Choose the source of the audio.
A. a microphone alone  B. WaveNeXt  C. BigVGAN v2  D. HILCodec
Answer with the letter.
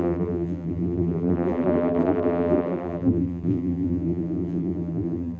C